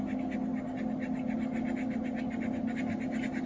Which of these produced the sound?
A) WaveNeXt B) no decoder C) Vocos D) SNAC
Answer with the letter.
B